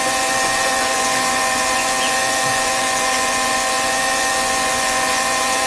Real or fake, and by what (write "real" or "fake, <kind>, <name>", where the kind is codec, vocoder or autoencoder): fake, vocoder, Vocos